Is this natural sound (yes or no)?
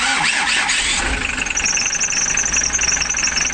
yes